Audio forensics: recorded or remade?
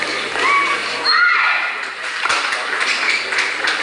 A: recorded